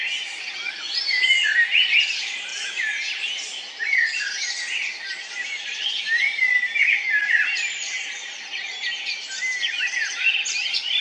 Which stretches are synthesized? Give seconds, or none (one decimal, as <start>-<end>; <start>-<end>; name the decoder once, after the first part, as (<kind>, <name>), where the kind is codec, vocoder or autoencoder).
none